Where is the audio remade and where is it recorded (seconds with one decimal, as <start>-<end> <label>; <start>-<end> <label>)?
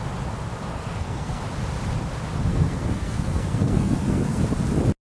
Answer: 0.0-0.7 recorded; 0.7-1.4 remade; 1.4-2.5 recorded; 2.5-4.4 remade; 4.4-5.1 recorded